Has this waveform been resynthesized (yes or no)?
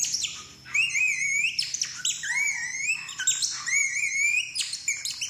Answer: no